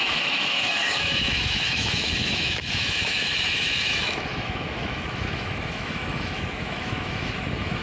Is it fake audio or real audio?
fake